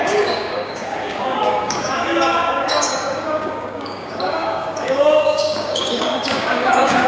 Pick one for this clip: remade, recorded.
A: remade